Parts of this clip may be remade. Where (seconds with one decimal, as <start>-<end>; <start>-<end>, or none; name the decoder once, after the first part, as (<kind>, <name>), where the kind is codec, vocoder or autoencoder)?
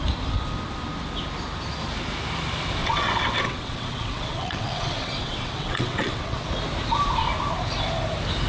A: 2.8-6.4 (vocoder, WaveNeXt)